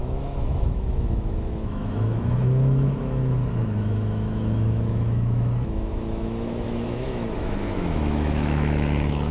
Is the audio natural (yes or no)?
no